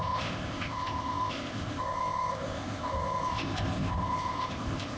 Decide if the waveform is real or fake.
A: fake